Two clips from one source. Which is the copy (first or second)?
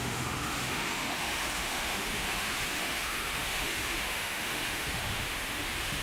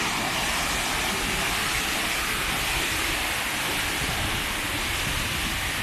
first